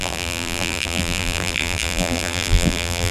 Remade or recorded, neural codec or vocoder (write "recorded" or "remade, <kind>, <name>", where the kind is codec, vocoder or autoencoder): remade, vocoder, BigVGAN v2